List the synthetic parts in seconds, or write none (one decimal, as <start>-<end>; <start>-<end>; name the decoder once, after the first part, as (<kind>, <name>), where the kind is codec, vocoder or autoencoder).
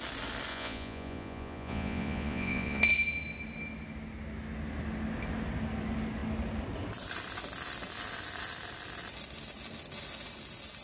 0.5-2.8 (vocoder, Vocos)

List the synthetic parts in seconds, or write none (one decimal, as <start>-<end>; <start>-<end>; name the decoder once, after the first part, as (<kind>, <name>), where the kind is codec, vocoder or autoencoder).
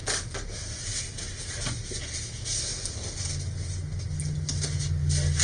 none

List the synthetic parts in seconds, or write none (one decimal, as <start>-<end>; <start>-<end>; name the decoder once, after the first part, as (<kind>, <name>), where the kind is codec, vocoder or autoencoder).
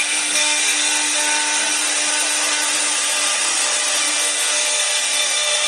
0.0-0.8 (codec, SNAC); 4.0-5.7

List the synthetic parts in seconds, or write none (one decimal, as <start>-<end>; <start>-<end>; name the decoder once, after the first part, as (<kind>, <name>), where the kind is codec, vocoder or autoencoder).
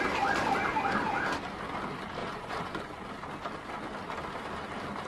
2.2-3.1 (vocoder, Vocos)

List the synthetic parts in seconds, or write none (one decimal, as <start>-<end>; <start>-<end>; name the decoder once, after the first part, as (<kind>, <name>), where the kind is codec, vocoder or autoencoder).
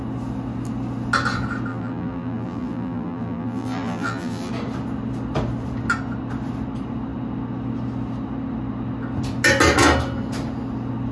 1.7-4.5 (vocoder, BigVGAN v2)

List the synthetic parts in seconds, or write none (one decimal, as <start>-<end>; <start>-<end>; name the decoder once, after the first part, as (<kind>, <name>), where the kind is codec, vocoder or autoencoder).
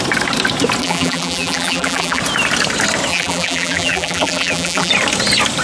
0.8-2.2 (vocoder, BigVGAN v2); 3.1-4.9